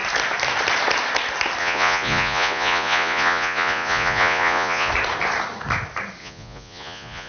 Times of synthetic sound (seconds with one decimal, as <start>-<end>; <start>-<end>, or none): 1.6-4.9; 6.2-7.3